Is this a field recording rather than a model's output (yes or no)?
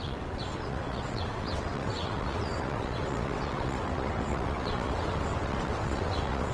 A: no